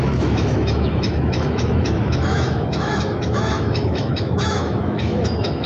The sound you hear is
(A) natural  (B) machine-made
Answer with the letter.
B